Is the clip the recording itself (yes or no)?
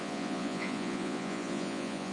no